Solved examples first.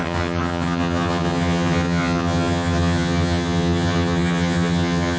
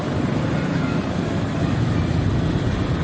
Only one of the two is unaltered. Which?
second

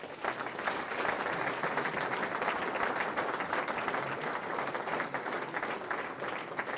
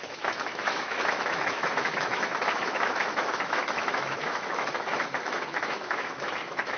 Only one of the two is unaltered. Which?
first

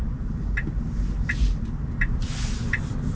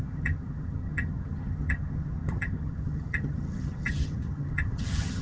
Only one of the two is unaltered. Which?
first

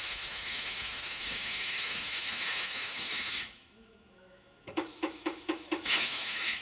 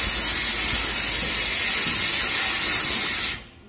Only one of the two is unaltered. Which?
second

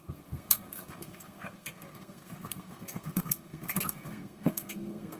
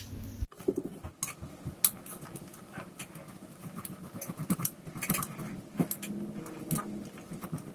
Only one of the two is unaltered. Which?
second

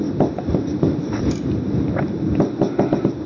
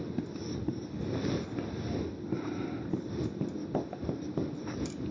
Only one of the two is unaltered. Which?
second